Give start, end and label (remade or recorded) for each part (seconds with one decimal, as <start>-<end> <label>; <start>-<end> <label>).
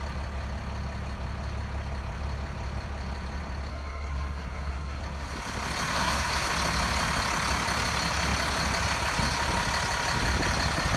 0.0-3.7 recorded; 3.7-5.0 remade; 5.0-5.9 recorded; 5.9-6.5 remade; 6.5-11.0 recorded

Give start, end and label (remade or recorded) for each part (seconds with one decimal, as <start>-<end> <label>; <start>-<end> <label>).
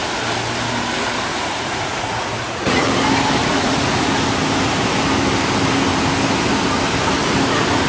0.0-1.3 recorded; 1.3-2.9 remade; 2.9-3.4 recorded; 3.4-4.1 remade; 4.1-7.9 recorded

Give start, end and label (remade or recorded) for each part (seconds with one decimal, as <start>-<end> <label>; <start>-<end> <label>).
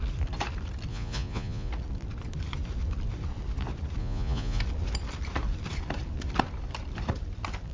0.0-0.9 recorded; 0.9-1.7 remade; 1.7-4.0 recorded; 4.0-4.6 remade; 4.6-7.7 recorded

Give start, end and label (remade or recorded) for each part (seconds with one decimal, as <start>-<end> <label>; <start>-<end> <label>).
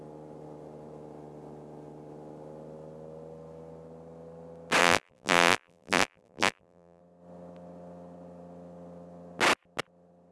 0.0-4.8 recorded; 4.8-7.0 remade; 7.0-10.3 recorded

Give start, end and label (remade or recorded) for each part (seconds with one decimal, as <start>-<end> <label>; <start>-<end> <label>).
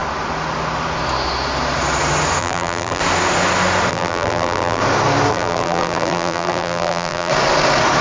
0.0-2.4 recorded; 2.4-3.0 remade; 3.0-3.9 recorded; 3.9-4.8 remade; 4.8-5.3 recorded; 5.3-7.3 remade; 7.3-8.0 recorded